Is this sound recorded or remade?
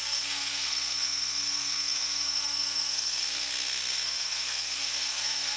remade